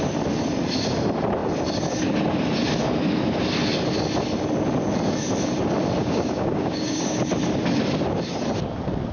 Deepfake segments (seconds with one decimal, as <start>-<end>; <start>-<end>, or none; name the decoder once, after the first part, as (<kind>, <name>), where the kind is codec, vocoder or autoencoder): 6.0-7.2 (codec, DAC)